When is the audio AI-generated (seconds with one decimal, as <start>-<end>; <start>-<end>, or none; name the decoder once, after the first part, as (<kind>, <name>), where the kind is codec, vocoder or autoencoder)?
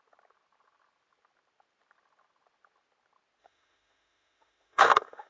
3.4-5.3 (autoencoder, DAC-VAE)